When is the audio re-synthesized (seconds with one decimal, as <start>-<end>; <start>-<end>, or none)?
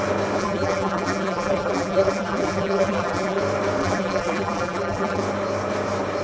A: 0.4-3.4; 3.8-5.2